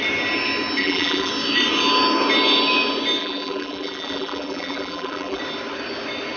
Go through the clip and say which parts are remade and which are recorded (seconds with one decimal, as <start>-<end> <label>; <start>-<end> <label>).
0.0-0.8 recorded; 0.8-1.3 remade; 1.3-3.2 recorded; 3.2-5.4 remade; 5.4-6.4 recorded